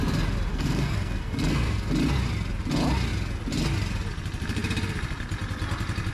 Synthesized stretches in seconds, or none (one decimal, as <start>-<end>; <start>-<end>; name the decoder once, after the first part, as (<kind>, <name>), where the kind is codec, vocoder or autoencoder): 0.5-1.9 (codec, SNAC)